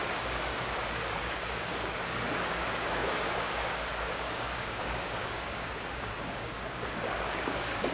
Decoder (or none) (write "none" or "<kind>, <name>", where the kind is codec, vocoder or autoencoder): codec, DAC